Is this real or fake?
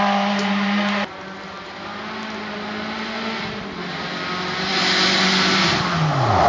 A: real